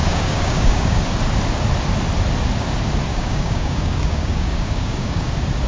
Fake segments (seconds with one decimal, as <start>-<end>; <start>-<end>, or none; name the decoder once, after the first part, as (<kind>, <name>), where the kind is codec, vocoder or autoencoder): 0.0-1.0 (codec, DAC); 3.1-5.3